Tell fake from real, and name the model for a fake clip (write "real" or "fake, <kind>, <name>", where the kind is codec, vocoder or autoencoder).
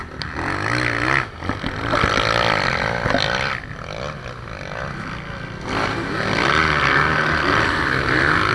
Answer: real